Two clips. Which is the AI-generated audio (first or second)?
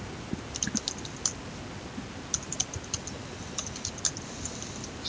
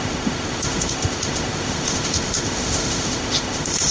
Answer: second